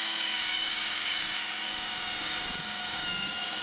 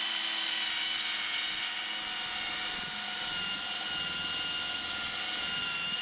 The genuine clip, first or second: second